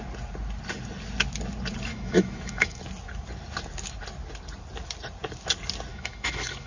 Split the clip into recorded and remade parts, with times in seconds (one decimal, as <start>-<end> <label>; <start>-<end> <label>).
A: 0.0-1.9 recorded; 1.9-2.8 remade; 2.8-5.9 recorded; 5.9-6.7 remade